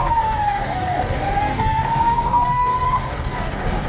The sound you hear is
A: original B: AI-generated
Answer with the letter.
B